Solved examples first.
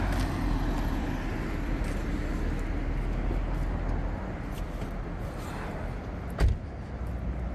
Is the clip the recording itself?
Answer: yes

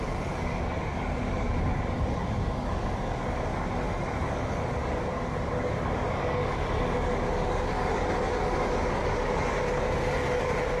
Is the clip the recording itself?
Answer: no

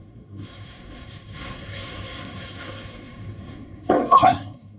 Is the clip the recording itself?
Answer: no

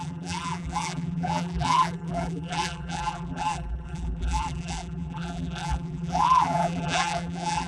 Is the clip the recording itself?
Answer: no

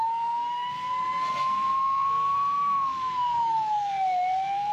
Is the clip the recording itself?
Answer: no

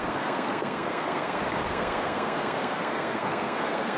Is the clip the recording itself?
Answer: no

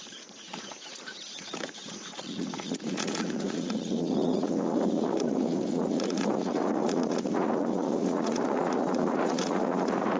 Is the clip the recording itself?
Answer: no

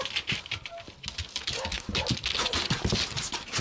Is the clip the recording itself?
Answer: yes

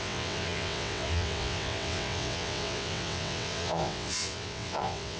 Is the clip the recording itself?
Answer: no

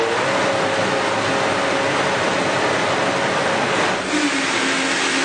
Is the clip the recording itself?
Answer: yes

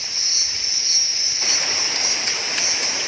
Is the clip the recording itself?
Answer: yes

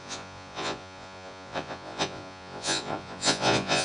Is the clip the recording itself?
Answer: no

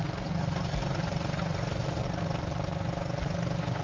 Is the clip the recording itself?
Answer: yes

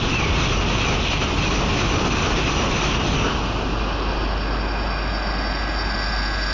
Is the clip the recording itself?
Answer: yes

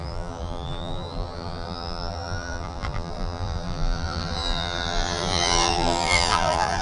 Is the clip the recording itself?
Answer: no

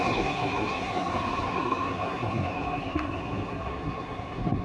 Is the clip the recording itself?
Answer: no